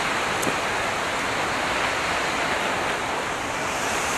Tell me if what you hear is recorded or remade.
recorded